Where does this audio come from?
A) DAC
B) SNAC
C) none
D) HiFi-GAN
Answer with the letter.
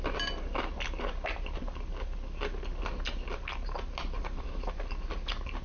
C